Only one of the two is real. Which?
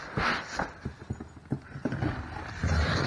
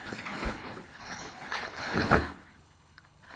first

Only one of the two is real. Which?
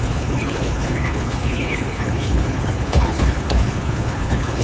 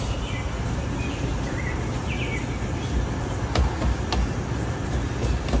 second